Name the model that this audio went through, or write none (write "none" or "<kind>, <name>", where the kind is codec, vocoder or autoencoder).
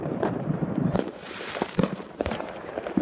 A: vocoder, BigVGAN v2